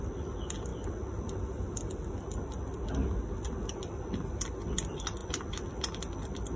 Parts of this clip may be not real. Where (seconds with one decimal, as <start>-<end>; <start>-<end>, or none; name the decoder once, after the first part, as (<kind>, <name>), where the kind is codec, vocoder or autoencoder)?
none